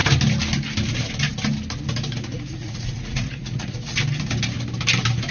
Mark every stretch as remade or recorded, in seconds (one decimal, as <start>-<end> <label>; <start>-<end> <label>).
0.0-2.3 recorded; 2.3-4.0 remade; 4.0-5.3 recorded